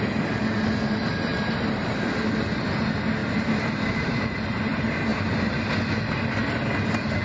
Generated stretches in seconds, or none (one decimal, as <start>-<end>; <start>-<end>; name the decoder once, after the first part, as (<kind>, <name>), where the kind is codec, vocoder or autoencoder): 1.3-2.0 (vocoder, BigVGAN v2); 3.2-4.6